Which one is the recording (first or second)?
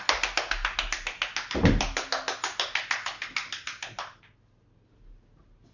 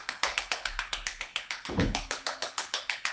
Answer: first